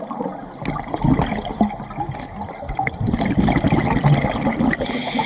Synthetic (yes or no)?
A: no